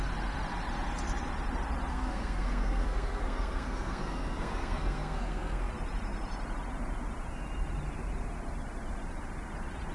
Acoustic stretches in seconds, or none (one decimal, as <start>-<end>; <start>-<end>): 0.0-1.9; 5.7-9.9